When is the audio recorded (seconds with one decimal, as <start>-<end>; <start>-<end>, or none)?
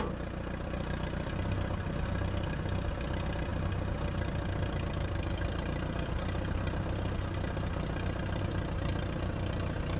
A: 0.0-10.0